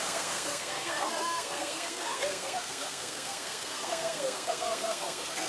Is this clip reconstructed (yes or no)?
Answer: yes